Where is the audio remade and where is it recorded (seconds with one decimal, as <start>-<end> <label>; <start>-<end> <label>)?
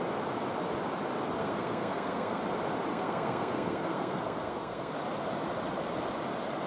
0.0-1.4 recorded; 1.4-2.4 remade; 2.4-2.9 recorded; 2.9-4.9 remade; 4.9-6.7 recorded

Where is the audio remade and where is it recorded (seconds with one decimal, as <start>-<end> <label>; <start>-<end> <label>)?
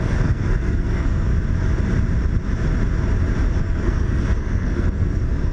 0.0-1.3 remade; 1.3-3.6 recorded; 3.6-5.5 remade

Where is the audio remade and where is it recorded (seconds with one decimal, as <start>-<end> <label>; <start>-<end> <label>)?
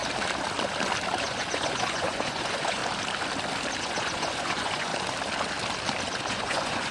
0.0-1.2 recorded; 1.2-2.8 remade; 2.8-3.8 recorded; 3.8-4.9 remade; 4.9-6.3 recorded; 6.3-6.9 remade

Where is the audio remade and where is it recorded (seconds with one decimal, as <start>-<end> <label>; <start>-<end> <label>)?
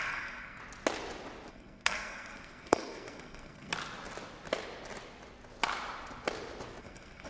0.0-0.6 remade; 0.6-1.5 recorded; 1.5-3.7 remade; 3.7-6.8 recorded; 6.8-7.3 remade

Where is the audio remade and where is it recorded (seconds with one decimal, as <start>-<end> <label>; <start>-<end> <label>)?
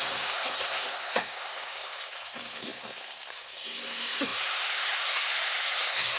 0.0-6.2 remade